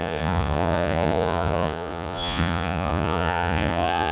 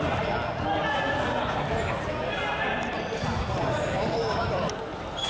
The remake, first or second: first